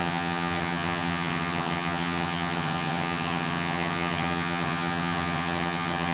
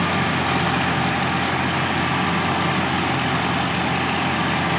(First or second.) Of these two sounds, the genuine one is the second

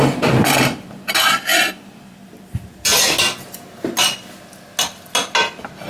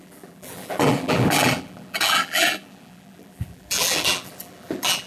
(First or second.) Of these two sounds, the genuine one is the first